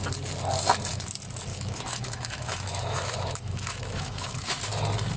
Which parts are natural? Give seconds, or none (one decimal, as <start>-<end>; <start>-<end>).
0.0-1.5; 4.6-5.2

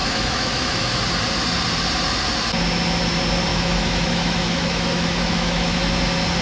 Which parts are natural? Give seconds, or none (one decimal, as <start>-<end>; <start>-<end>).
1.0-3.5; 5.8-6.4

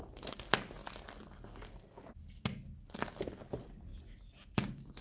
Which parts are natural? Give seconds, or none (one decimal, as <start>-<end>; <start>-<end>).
0.0-5.0

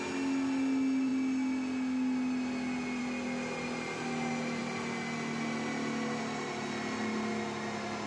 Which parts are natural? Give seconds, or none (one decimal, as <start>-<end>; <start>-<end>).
0.0-8.1

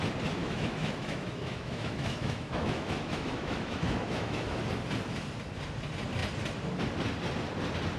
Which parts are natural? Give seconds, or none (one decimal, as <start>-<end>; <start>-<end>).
0.0-0.4; 4.6-8.0